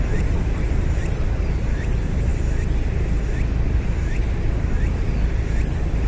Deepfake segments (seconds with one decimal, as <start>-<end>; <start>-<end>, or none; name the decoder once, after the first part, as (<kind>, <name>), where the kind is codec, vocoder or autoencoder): 0.0-2.3 (vocoder, BigVGAN v2); 5.6-6.1